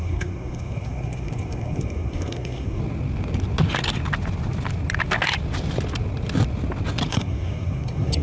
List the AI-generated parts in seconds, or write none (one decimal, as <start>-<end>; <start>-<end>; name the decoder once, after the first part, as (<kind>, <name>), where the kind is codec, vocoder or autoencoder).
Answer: 0.0-2.8 (codec, SNAC); 7.1-8.2